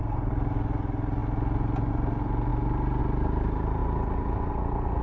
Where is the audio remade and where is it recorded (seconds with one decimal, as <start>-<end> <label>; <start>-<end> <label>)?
0.0-5.0 recorded